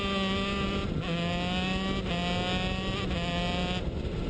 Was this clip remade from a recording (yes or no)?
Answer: no